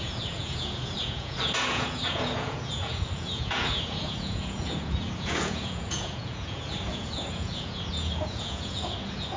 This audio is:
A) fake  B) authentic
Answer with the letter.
A